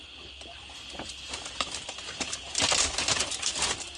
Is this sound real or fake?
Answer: real